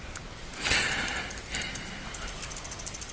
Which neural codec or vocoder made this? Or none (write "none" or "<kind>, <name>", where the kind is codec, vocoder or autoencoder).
none